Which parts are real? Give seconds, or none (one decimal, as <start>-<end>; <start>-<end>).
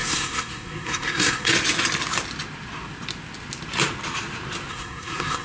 1.5-4.7